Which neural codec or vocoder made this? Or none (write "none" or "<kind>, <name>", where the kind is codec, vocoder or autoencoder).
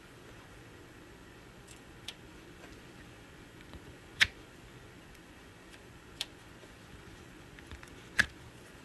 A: vocoder, Vocos